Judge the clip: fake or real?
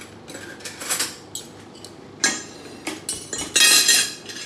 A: real